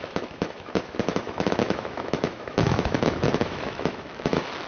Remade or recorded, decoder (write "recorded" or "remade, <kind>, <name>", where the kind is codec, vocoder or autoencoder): remade, autoencoder, DAC-VAE